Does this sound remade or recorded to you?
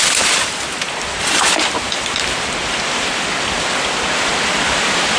recorded